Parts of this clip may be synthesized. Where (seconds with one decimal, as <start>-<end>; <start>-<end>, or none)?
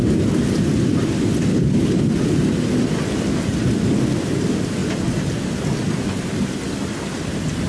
1.5-2.1